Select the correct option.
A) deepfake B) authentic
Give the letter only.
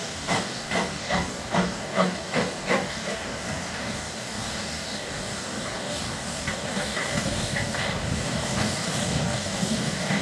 A